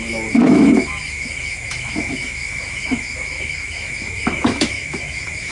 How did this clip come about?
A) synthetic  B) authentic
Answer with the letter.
A